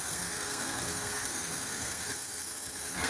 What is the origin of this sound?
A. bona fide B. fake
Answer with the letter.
B